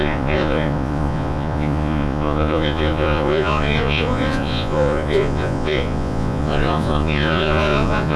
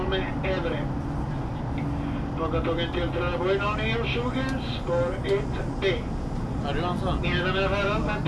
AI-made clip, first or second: first